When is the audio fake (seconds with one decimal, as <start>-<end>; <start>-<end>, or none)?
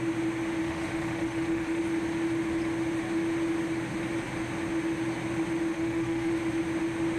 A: 0.6-1.8; 5.7-6.3